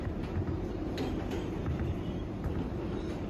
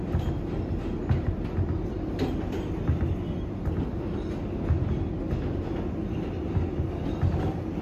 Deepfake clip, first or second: first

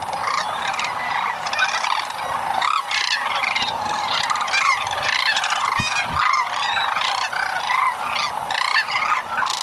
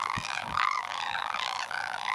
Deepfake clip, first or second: second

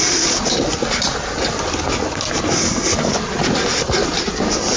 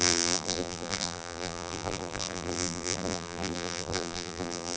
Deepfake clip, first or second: second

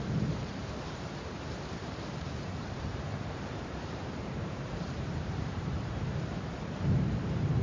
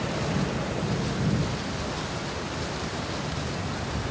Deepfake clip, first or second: first